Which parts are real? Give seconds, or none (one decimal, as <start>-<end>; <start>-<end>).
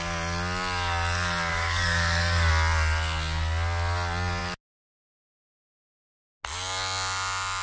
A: 0.0-1.5; 2.5-7.6